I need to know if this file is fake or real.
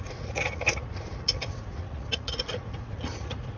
fake